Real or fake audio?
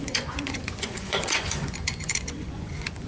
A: fake